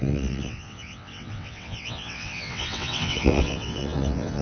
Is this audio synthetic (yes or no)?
yes